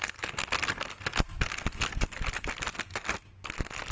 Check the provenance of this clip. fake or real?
real